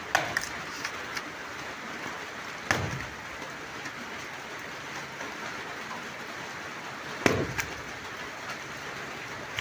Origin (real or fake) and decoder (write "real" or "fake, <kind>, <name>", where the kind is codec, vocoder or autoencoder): real